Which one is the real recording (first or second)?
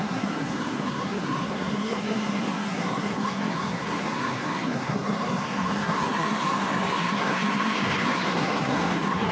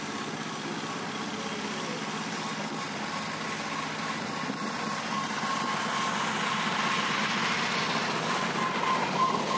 second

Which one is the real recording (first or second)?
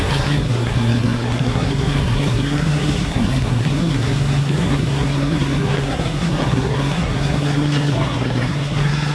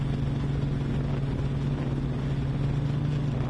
second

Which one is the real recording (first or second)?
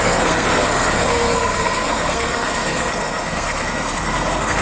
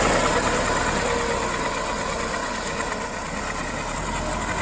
second